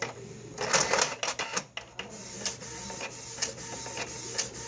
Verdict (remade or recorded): recorded